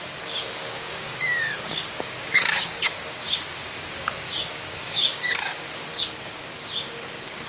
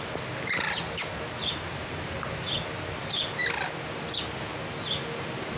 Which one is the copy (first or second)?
first